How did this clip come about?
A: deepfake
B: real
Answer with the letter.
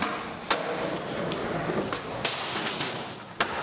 B